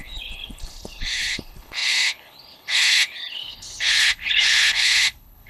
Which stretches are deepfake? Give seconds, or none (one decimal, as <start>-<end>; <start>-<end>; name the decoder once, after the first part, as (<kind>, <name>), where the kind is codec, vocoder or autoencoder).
0.0-5.5 (codec, HILCodec)